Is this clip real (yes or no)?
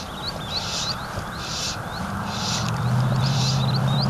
no